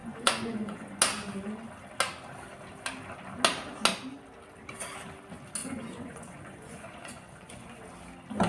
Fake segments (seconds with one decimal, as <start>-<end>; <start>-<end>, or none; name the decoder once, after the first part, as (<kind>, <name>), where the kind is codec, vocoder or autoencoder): 0.0-1.0 (vocoder, Vocos); 5.6-7.8